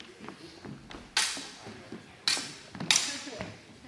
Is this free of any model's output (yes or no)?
yes